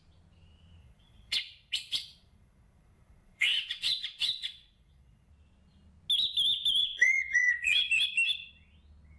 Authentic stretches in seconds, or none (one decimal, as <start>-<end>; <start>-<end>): 0.0-0.8; 5.3-6.8; 7.9-9.2